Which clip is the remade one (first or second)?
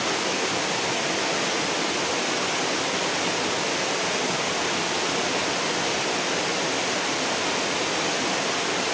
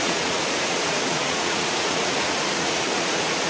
second